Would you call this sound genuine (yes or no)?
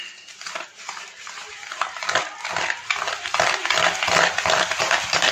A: yes